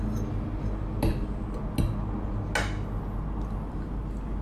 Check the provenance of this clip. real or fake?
real